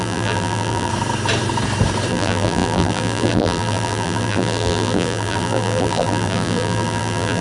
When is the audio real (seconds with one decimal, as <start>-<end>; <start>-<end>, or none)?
0.9-2.1

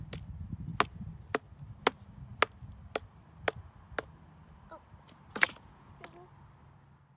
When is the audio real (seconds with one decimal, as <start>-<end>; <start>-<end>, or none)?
0.0-5.3; 5.9-7.2

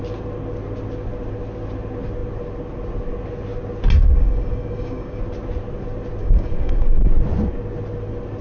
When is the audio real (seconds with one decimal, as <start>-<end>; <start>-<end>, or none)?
0.0-4.0; 5.2-6.2; 7.1-8.4

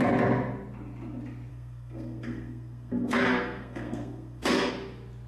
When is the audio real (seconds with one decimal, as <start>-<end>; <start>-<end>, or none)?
0.0-1.5; 4.7-5.3

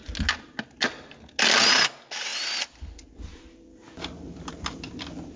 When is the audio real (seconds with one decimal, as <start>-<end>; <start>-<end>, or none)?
0.0-5.4

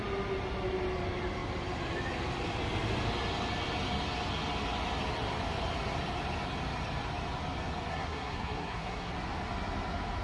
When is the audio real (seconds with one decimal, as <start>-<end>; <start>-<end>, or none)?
0.0-7.9; 9.1-10.2

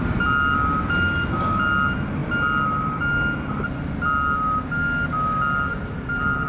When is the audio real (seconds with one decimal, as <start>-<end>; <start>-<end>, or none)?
0.0-6.5

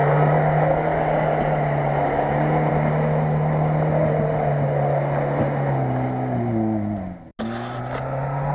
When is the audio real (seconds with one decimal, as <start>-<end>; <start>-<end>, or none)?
0.0-8.5